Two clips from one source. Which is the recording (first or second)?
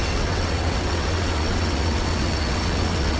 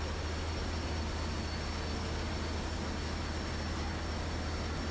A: second